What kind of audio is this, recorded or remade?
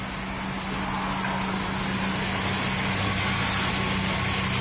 recorded